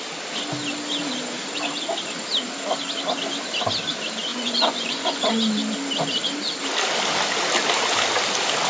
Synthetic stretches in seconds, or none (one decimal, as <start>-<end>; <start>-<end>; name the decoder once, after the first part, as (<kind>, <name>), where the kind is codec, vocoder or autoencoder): 4.3-5.3 (vocoder, Vocos)